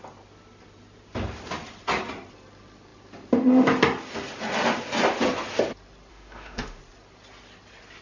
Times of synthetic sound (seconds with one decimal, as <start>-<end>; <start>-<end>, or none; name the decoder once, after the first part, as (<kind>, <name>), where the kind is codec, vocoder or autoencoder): 6.1-6.8 (autoencoder, DAC-VAE)